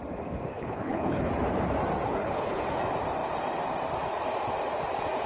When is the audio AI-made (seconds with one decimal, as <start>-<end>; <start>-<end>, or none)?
0.5-1.3; 2.1-2.6